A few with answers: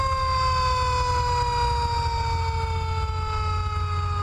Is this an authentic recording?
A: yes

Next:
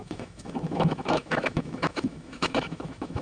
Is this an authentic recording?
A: no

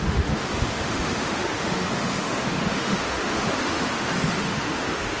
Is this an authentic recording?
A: no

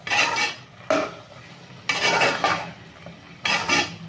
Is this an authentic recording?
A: yes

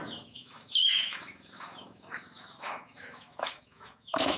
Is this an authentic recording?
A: no